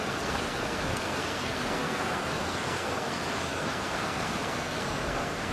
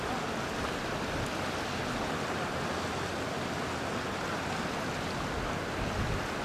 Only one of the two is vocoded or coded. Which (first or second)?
first